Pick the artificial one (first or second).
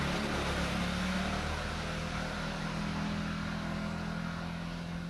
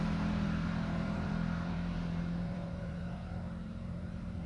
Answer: second